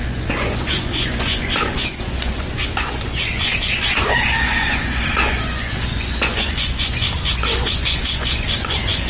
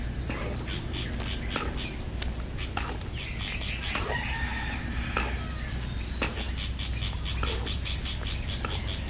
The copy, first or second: first